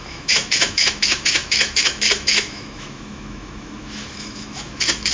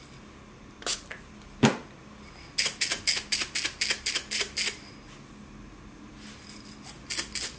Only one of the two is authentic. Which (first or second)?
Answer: second